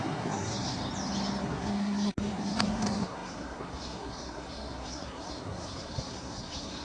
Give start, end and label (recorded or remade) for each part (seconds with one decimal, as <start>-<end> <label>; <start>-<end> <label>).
0.0-0.8 remade; 0.8-1.4 recorded; 1.4-6.8 remade